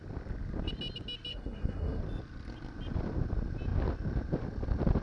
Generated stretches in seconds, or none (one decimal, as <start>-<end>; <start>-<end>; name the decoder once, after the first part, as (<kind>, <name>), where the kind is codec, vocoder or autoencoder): 1.3-2.0 (codec, SNAC)